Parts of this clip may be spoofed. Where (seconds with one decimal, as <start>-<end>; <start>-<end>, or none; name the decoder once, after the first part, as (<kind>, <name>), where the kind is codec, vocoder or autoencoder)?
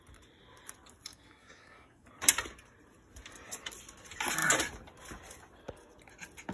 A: 1.1-2.1 (codec, DAC)